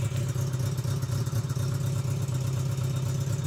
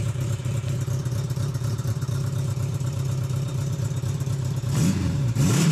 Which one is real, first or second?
first